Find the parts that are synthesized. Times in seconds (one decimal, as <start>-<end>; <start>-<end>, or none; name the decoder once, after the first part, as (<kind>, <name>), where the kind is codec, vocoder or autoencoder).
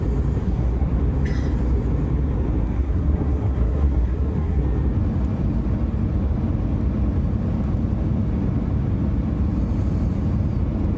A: 0.4-1.0 (codec, SNAC); 2.6-4.6